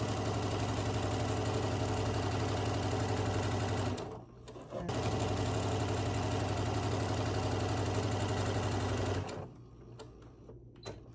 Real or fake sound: real